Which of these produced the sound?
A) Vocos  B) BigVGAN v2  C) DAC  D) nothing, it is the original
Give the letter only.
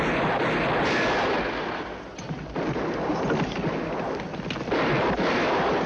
D